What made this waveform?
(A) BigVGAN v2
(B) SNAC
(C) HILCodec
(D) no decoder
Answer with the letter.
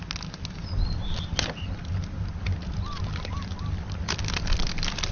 D